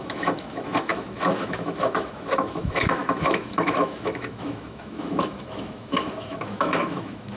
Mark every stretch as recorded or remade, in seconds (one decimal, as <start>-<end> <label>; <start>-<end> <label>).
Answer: 0.0-7.4 remade